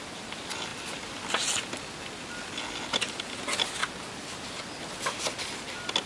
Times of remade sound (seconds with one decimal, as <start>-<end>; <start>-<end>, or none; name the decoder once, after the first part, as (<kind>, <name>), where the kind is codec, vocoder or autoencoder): none